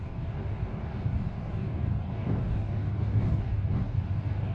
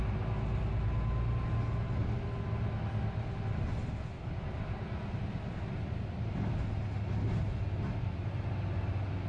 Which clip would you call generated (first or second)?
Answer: first